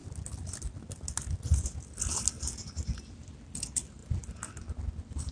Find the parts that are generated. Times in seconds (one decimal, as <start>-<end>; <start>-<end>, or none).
none